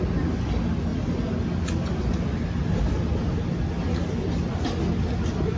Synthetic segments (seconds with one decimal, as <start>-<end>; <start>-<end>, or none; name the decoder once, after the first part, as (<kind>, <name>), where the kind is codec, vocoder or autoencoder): none